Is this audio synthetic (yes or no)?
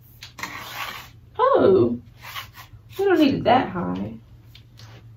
no